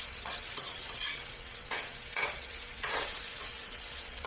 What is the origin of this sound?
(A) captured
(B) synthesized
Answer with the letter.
B